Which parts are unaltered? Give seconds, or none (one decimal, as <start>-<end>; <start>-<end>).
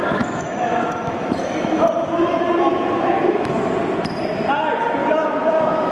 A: 1.6-2.7; 3.7-5.0